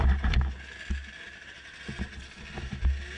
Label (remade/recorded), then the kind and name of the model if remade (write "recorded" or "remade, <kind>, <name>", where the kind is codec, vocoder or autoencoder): recorded